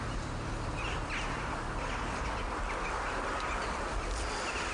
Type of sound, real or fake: real